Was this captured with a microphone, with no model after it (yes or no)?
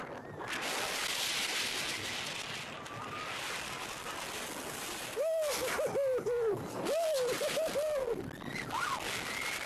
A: yes